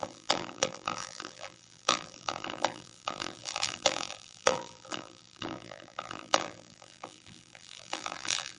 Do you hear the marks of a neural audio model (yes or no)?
yes